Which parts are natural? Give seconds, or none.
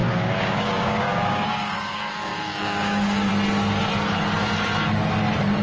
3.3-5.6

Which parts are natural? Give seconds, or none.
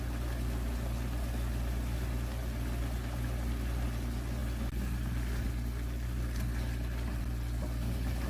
0.0-8.3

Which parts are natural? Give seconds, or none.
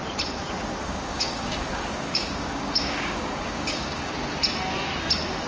0.0-0.8; 4.1-5.5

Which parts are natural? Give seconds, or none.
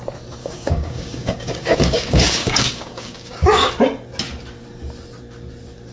0.0-0.4; 3.7-5.9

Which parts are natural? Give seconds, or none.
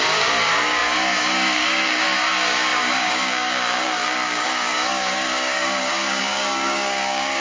none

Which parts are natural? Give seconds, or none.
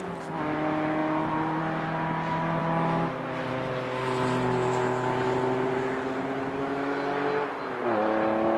0.0-8.6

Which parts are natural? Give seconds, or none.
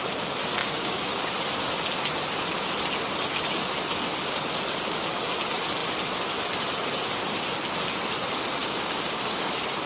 0.0-0.6; 1.3-8.6; 9.5-9.9